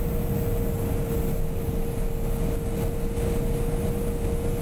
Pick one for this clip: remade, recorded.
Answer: recorded